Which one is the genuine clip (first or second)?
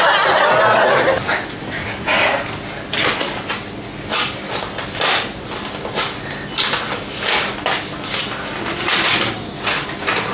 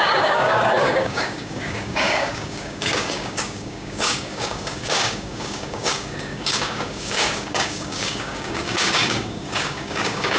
first